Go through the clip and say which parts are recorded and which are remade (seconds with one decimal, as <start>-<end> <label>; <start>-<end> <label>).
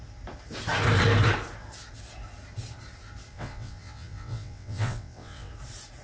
0.0-3.3 recorded; 3.3-5.5 remade; 5.5-6.0 recorded